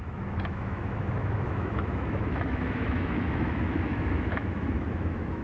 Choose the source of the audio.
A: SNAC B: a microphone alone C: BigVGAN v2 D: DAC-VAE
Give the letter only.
D